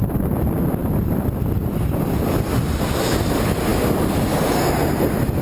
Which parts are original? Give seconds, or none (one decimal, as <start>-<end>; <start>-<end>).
0.0-5.4